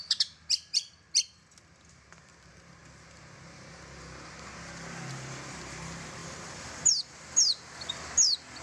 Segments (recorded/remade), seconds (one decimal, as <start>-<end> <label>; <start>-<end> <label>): 0.0-6.2 recorded; 6.2-6.8 remade; 6.8-8.6 recorded